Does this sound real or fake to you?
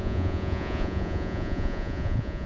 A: fake